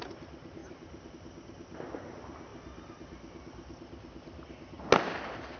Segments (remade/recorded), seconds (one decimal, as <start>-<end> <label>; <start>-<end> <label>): 0.0-5.6 recorded